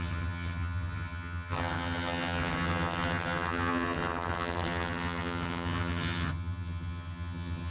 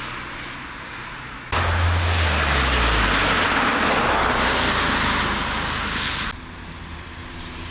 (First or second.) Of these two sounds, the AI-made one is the first